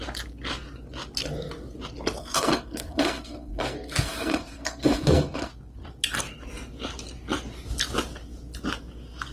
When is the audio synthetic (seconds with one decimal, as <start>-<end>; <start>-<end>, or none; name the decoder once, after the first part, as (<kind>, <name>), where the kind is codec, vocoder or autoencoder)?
2.2-5.5 (codec, SNAC)